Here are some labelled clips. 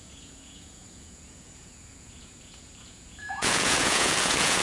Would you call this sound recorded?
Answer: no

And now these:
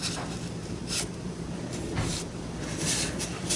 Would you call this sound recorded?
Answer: no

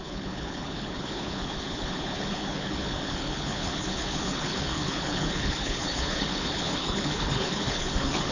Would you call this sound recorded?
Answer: no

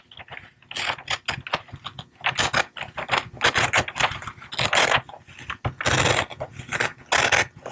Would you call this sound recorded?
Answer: yes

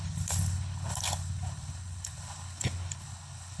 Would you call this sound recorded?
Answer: no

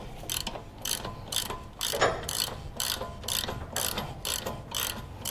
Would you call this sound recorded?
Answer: yes